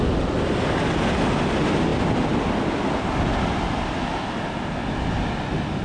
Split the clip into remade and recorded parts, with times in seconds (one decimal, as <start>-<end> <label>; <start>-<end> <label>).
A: 0.0-5.8 recorded